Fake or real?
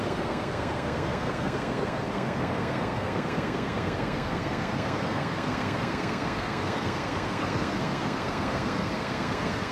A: fake